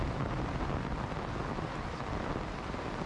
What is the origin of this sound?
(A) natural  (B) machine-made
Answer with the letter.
A